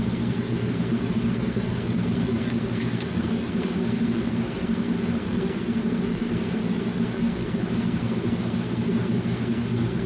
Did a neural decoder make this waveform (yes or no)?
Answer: yes